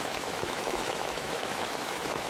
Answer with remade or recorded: remade